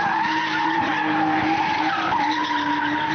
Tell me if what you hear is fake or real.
fake